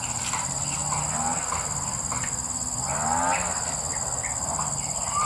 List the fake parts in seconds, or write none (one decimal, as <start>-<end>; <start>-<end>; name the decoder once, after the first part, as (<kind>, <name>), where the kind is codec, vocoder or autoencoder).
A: none